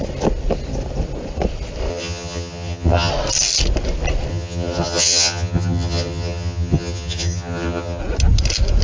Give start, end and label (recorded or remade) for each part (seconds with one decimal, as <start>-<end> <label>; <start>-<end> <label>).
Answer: 0.0-1.9 recorded; 1.9-3.1 remade; 3.1-4.3 recorded; 4.3-8.0 remade; 8.0-8.8 recorded